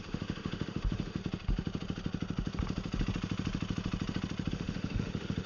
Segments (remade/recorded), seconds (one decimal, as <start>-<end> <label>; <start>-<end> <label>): 0.0-1.2 remade; 1.2-4.5 recorded; 4.5-5.5 remade